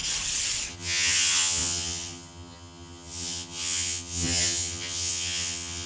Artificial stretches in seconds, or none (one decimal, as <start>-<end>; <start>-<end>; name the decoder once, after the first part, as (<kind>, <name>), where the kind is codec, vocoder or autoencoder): 0.7-5.9 (vocoder, HiFi-GAN)